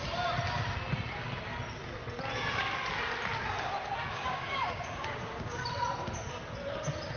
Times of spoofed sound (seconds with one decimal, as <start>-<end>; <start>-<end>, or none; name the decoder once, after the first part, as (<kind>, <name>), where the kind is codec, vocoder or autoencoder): 4.1-5.6 (codec, DAC)